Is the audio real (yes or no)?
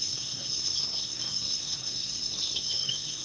no